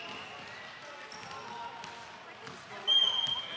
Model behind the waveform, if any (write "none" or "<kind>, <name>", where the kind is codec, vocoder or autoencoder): none